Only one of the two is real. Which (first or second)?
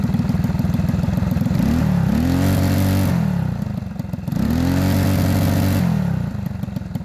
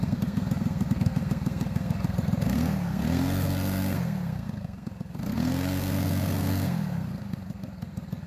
first